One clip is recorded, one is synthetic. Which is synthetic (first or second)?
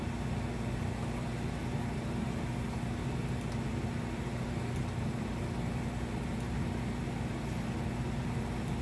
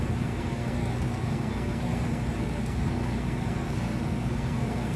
second